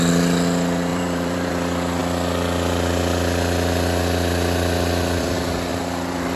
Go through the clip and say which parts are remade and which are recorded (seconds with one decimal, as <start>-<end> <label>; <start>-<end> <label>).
0.0-0.9 recorded; 0.9-1.5 remade; 1.5-5.7 recorded; 5.7-6.4 remade